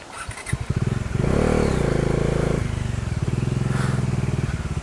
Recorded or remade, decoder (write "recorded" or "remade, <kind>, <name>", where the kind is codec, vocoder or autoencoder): recorded